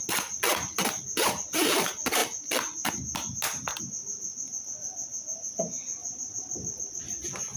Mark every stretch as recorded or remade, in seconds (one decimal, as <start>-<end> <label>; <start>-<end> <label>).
0.0-7.6 recorded